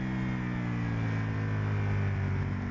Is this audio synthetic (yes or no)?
no